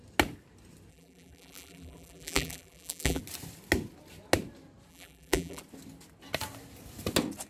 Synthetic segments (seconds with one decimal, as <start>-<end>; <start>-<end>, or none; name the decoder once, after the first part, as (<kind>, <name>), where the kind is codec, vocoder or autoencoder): 0.9-3.2 (vocoder, BigVGAN v2); 4.9-5.6